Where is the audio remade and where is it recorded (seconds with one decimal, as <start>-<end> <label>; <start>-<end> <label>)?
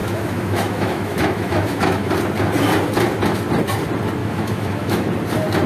0.0-2.1 remade; 2.1-4.2 recorded; 4.2-5.1 remade; 5.1-5.7 recorded